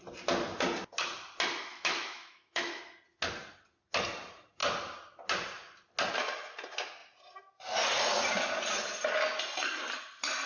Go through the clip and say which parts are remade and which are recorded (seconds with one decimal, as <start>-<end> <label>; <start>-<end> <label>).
0.0-1.7 recorded; 1.7-2.8 remade; 2.8-10.5 recorded